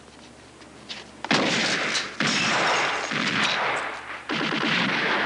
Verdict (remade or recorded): recorded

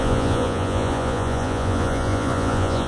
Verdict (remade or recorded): remade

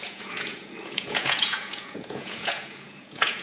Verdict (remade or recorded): remade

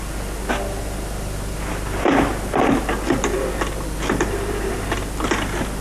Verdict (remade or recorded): recorded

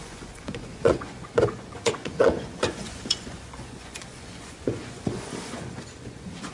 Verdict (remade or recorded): remade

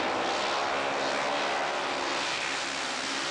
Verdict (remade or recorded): recorded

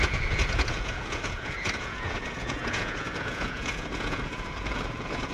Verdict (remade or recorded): remade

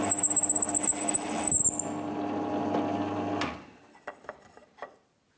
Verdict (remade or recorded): recorded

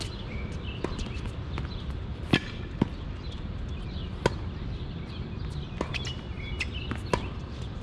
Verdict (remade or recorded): recorded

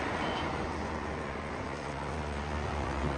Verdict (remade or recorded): remade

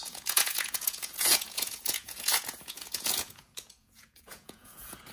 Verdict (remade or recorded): remade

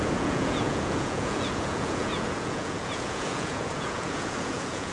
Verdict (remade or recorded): remade